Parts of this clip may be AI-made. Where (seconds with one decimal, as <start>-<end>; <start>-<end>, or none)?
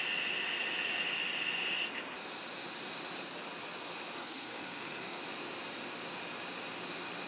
4.2-5.2